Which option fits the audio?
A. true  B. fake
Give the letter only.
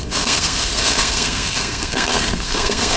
B